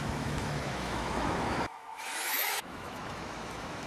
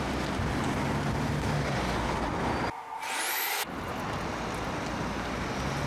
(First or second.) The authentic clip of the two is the second